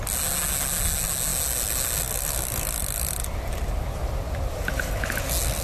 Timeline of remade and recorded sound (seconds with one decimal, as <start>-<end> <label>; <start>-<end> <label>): 0.0-5.6 recorded